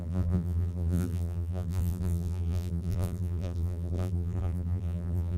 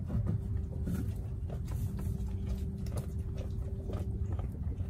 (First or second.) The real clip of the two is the second